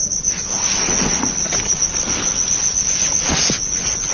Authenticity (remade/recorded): recorded